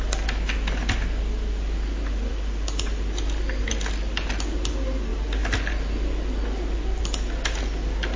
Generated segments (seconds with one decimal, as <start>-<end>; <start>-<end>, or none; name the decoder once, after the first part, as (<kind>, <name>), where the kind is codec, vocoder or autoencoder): none